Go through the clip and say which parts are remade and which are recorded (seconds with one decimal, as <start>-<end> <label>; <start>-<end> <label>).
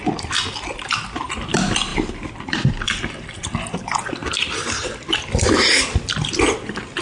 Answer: 0.0-1.9 recorded; 1.9-2.7 remade; 2.7-4.2 recorded; 4.2-5.2 remade; 5.2-7.0 recorded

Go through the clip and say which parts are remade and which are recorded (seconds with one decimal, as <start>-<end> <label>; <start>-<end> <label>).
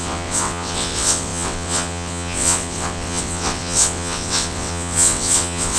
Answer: 0.0-5.8 remade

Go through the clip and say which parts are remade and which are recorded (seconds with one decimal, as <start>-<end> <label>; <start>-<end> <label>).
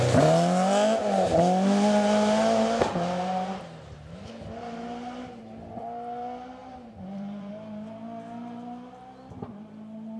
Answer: 0.0-6.6 recorded; 6.6-7.5 remade; 7.5-10.2 recorded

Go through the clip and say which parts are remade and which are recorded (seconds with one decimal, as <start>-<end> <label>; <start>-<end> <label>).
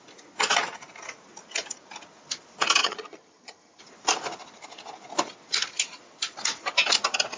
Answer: 0.0-2.8 recorded; 2.8-3.8 remade; 3.8-7.4 recorded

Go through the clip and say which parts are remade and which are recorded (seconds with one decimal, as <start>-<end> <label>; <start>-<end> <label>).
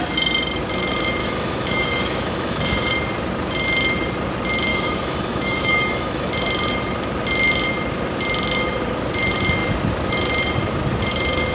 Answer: 0.0-1.2 recorded; 1.2-2.9 remade; 2.9-4.7 recorded; 4.7-6.3 remade; 6.3-11.5 recorded